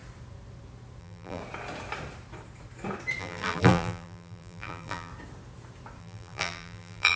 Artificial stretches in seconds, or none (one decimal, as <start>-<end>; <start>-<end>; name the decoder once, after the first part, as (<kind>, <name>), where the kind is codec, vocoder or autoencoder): 1.0-1.4 (vocoder, BigVGAN v2); 3.2-5.1; 6.0-7.2